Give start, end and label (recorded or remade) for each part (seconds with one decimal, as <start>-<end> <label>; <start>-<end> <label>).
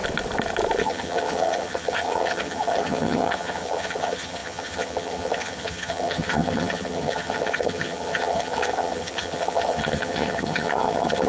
0.0-0.8 recorded; 0.8-11.3 remade